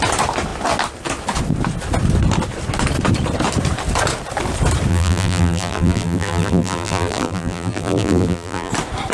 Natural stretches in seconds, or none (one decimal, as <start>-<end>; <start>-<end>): 0.0-4.9; 8.7-9.1

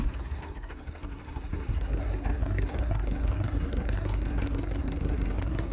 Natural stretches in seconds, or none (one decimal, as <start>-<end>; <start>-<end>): none

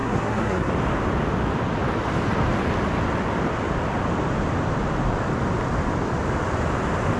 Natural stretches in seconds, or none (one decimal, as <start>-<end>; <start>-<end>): 0.7-7.2

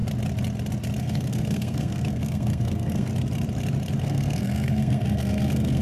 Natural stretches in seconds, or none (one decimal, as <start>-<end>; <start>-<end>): 0.0-1.0; 3.1-4.0

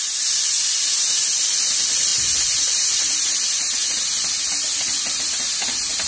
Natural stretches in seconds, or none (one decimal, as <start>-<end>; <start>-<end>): 0.0-6.1